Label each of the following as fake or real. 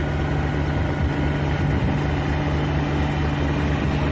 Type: real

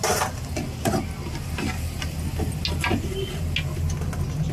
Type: real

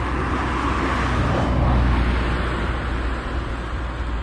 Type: real